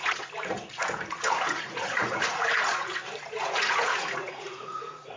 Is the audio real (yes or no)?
no